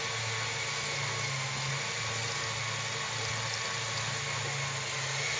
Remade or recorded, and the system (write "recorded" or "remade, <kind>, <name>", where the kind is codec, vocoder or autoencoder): recorded